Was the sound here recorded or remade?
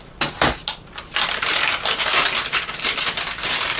recorded